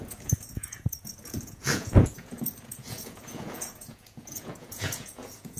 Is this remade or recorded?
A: remade